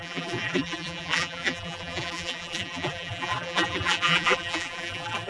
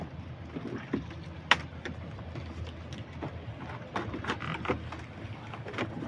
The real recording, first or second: second